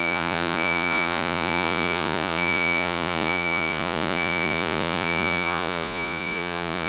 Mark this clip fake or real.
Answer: fake